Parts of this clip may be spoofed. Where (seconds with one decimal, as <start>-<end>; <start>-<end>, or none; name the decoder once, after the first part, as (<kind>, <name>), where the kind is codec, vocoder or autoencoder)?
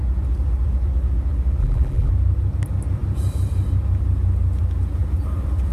1.6-2.1 (vocoder, BigVGAN v2)